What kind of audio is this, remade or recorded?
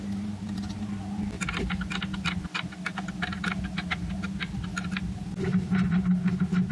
recorded